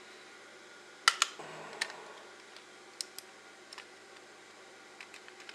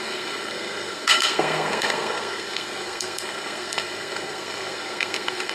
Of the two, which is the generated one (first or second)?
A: second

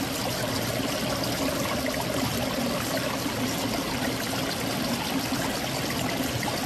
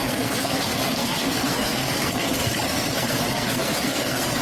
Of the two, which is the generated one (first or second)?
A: second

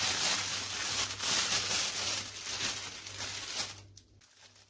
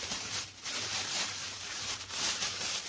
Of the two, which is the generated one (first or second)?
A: second